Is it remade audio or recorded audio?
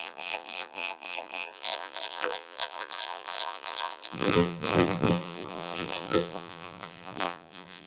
remade